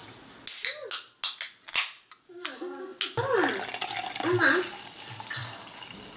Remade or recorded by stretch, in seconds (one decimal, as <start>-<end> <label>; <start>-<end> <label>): 0.0-6.2 recorded